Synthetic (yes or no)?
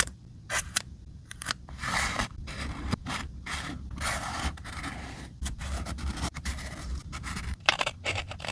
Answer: yes